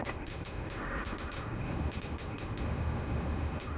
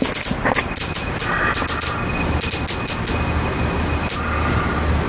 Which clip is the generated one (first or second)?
first